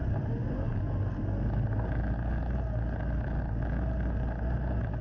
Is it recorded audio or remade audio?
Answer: recorded